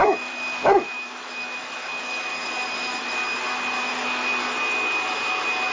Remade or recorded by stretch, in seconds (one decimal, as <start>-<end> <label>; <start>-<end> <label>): 0.0-2.3 remade; 2.3-5.7 recorded